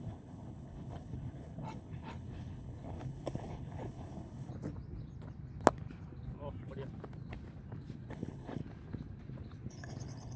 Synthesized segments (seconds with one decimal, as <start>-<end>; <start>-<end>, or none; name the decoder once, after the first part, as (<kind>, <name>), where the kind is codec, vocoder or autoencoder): 0.0-4.5 (codec, HILCodec); 8.1-8.6; 9.7-10.4